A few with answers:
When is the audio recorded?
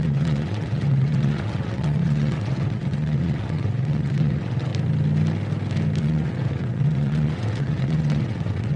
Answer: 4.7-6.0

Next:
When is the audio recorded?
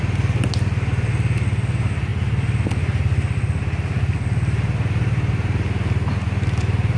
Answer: 0.0-7.0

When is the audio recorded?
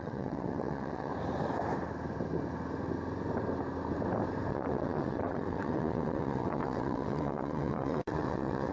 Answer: 1.1-4.5